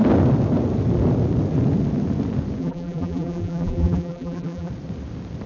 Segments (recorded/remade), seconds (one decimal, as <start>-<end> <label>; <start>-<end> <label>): 0.0-2.6 recorded; 2.6-4.7 remade; 4.7-5.5 recorded